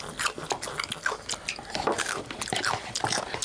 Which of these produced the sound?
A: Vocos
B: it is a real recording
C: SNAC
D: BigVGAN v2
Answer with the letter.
B